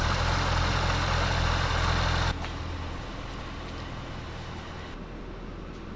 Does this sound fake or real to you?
real